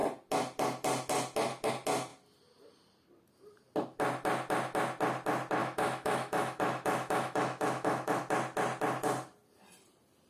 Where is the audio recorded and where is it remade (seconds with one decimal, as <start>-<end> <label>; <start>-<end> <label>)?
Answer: 0.0-5.6 recorded; 5.6-8.2 remade; 8.2-10.3 recorded